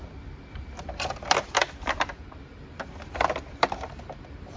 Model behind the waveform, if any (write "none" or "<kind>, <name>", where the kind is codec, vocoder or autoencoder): vocoder, BigVGAN v2